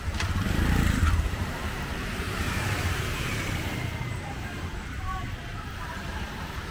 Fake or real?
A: fake